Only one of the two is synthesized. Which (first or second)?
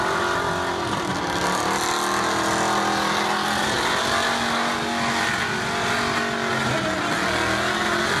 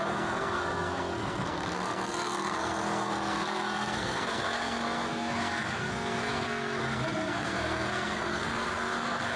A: second